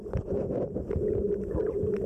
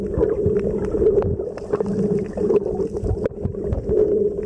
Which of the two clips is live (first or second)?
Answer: second